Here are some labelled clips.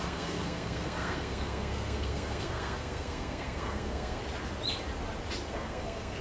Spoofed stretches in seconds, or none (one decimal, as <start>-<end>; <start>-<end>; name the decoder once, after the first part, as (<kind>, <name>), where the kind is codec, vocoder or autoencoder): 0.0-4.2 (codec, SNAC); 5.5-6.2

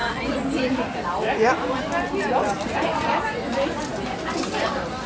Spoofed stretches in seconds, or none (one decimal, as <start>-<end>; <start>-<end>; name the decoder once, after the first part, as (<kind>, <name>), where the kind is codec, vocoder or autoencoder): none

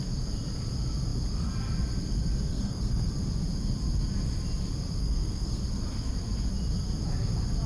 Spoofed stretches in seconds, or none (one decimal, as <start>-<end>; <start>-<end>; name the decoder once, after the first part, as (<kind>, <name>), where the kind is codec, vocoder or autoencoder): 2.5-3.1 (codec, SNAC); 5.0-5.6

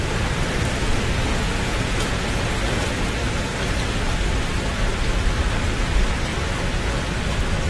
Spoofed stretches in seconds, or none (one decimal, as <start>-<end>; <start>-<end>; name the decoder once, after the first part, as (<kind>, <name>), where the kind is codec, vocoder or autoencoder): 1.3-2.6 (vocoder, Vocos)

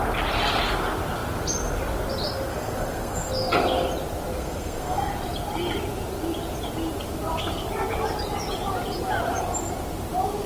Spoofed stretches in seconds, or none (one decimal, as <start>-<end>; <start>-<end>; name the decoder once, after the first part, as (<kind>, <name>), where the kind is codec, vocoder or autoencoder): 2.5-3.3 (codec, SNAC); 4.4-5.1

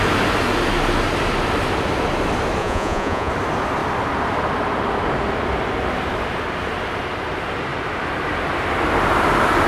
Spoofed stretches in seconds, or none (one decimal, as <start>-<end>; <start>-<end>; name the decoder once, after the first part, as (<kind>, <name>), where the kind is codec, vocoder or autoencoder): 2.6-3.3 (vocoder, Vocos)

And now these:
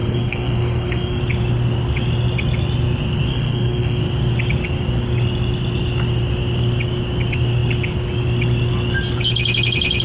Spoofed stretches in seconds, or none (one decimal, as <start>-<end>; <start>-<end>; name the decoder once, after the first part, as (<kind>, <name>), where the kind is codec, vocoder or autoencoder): 0.0-1.2 (codec, SNAC); 3.3-4.0